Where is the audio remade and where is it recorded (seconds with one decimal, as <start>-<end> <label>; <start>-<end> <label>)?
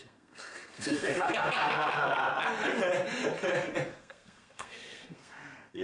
0.0-2.2 remade; 2.2-4.0 recorded; 4.0-5.8 remade